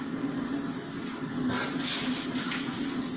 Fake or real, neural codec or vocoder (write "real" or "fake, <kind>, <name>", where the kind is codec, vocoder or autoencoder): real